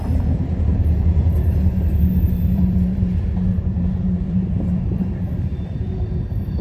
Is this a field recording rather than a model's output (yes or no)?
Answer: no